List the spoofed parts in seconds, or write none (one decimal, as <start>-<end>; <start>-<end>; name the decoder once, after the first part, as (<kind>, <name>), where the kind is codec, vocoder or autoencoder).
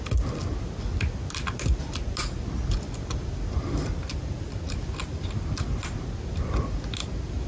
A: none